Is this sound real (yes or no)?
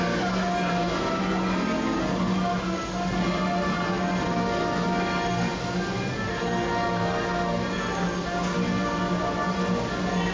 yes